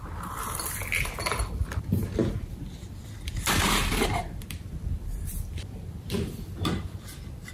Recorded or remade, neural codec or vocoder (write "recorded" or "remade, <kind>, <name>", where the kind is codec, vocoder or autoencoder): remade, vocoder, BigVGAN v2